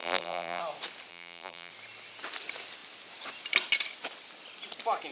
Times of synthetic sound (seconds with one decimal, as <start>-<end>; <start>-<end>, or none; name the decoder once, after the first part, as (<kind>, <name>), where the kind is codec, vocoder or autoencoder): 0.0-0.6 (vocoder, BigVGAN v2); 1.1-1.7